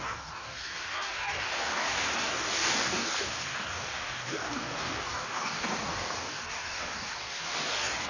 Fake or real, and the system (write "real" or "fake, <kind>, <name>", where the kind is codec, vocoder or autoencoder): fake, codec, DAC